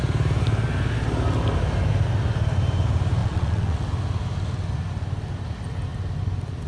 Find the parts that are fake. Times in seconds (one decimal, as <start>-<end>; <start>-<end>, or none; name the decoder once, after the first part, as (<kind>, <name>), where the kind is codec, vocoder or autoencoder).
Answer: 3.2-3.8 (vocoder, WaveNeXt)